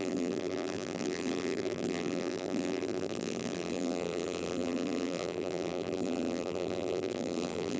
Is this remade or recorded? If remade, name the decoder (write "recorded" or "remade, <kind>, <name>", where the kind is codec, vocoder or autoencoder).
remade, vocoder, BigVGAN v2